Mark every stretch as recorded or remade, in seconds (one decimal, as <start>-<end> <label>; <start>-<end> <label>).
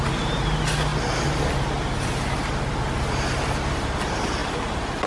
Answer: 0.0-5.1 recorded